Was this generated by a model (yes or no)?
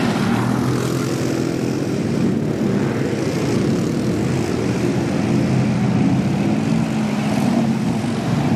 no